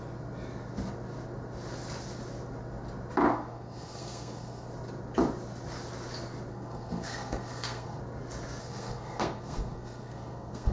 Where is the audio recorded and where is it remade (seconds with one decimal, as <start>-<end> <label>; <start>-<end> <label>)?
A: 0.0-3.3 recorded; 3.3-4.7 remade; 4.7-6.5 recorded; 6.5-8.0 remade; 8.0-8.6 recorded; 8.6-10.7 remade